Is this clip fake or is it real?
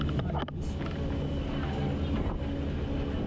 real